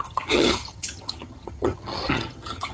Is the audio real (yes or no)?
no